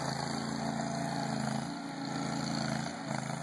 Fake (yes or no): no